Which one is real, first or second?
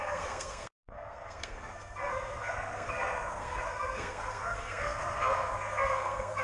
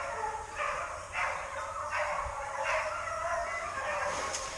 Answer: second